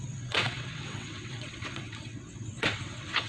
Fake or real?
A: fake